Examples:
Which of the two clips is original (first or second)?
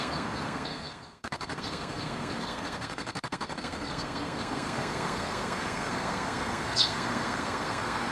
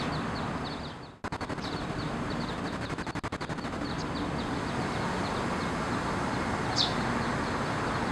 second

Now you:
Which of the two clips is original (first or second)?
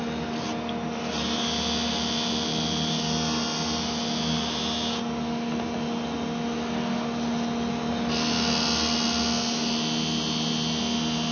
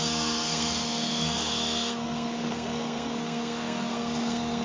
first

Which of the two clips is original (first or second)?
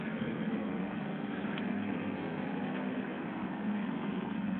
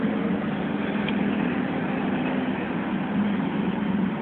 second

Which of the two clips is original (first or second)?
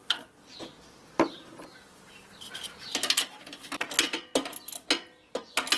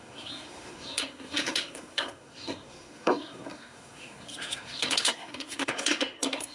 first